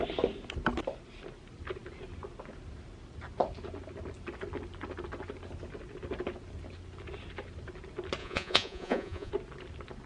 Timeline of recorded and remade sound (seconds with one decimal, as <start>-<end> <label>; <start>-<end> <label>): 0.0-8.2 recorded; 8.2-9.3 remade; 9.3-10.1 recorded